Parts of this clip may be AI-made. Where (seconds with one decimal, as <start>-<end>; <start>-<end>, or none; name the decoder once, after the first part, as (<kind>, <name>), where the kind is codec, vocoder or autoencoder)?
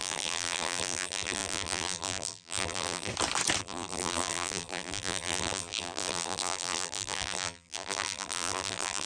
0.0-3.1 (vocoder, BigVGAN v2); 3.6-9.1